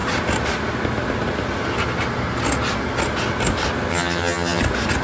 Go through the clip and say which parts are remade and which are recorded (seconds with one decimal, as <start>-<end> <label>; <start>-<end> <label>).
0.0-3.9 recorded; 3.9-4.6 remade; 4.6-5.0 recorded